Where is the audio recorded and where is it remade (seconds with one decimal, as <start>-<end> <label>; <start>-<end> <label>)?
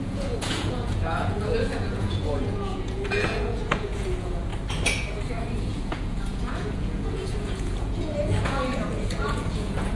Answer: 0.0-4.5 remade; 4.5-5.7 recorded; 5.7-10.0 remade